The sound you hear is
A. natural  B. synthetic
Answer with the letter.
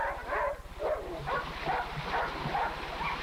A